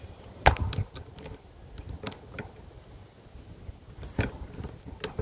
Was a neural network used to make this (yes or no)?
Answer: no